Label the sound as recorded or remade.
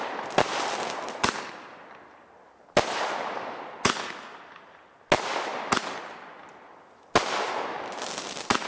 recorded